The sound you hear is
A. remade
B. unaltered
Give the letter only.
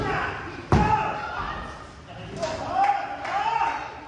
B